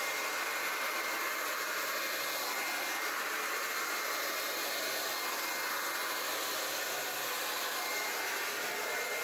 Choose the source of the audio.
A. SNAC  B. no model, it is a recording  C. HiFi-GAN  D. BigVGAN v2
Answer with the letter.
B